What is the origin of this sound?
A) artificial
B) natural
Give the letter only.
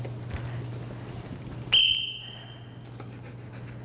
B